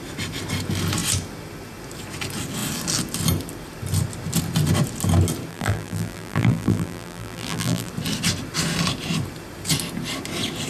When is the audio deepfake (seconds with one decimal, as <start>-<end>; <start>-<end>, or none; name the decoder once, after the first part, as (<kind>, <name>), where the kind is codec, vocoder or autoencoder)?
5.5-7.9 (vocoder, BigVGAN v2)